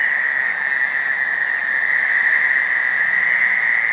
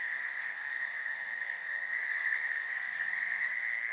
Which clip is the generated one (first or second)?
second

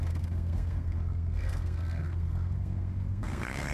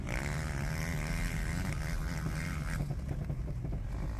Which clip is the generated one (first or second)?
first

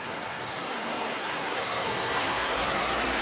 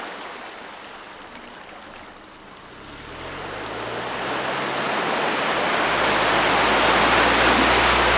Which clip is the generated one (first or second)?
first